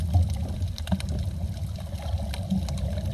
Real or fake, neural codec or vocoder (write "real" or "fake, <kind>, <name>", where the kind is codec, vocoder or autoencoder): real